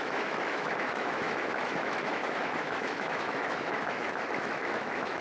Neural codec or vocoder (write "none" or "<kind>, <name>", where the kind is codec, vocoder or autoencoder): autoencoder, DAC-VAE